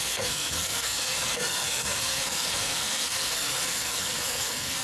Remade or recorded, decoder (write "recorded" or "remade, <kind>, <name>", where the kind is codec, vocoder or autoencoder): remade, codec, SNAC